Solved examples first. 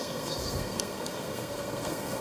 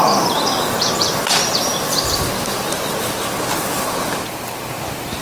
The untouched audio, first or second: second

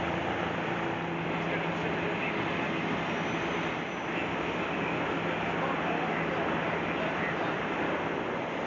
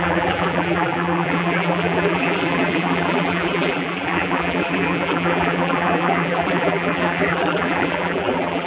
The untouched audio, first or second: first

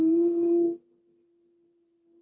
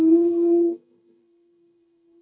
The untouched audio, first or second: first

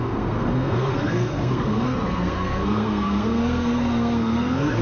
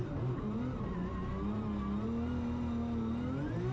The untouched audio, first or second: second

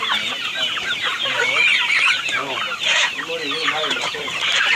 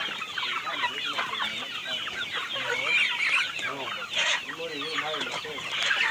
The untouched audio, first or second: second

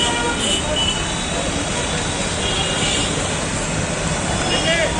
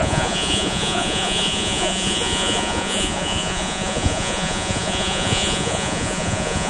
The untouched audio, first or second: first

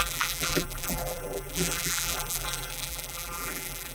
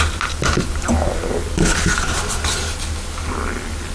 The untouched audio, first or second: second